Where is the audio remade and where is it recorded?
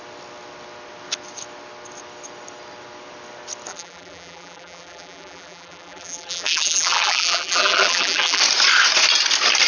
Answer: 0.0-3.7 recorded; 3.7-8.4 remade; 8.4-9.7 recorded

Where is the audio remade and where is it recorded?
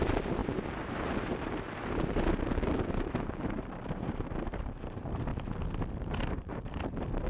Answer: 0.0-5.3 remade; 5.3-6.0 recorded; 6.0-7.3 remade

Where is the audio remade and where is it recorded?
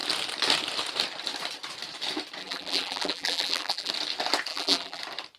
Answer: 0.0-2.4 recorded; 2.4-3.9 remade; 3.9-4.5 recorded; 4.5-5.0 remade; 5.0-5.4 recorded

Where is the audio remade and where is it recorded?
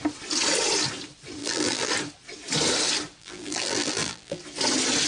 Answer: 0.0-1.4 recorded; 1.4-1.9 remade; 1.9-3.2 recorded; 3.2-4.4 remade; 4.4-5.1 recorded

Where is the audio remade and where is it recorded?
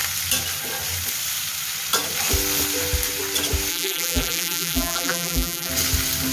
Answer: 0.0-3.7 recorded; 3.7-5.7 remade; 5.7-6.3 recorded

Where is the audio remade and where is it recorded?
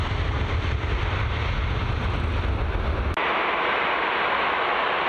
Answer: 0.0-1.4 remade; 1.4-5.1 recorded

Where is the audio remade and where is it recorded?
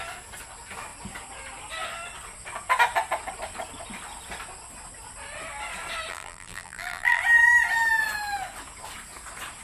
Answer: 0.0-6.1 recorded; 6.1-7.2 remade; 7.2-9.6 recorded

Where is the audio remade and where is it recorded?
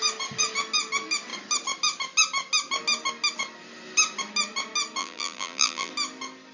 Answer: 0.0-5.0 recorded; 5.0-5.9 remade; 5.9-6.5 recorded